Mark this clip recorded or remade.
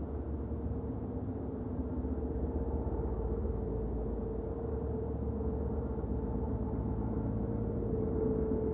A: recorded